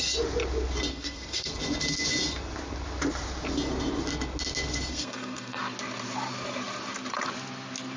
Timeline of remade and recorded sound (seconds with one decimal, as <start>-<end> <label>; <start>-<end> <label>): 0.0-0.9 recorded; 0.9-1.5 remade; 1.5-4.9 recorded; 4.9-5.6 remade; 5.6-8.0 recorded